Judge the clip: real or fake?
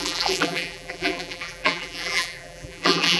fake